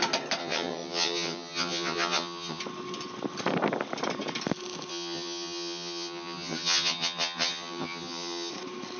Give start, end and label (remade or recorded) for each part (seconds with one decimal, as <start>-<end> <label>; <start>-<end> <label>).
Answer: 0.0-0.4 recorded; 0.4-2.6 remade; 2.6-4.9 recorded; 4.9-8.5 remade; 8.5-9.0 recorded